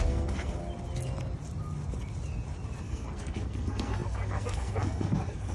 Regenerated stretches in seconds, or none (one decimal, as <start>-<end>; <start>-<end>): 0.0-0.6; 2.8-5.5